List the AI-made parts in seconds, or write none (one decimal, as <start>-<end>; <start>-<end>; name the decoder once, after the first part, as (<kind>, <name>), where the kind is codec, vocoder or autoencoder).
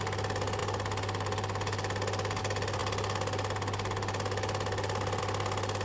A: none